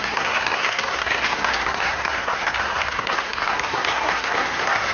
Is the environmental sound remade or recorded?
remade